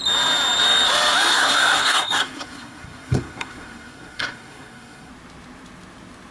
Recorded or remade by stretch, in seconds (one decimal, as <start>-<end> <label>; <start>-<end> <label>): 0.0-1.3 recorded; 1.3-5.1 remade; 5.1-6.3 recorded